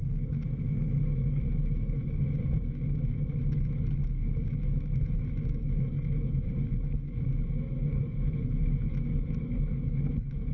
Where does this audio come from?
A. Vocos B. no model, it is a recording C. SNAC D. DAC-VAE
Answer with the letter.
D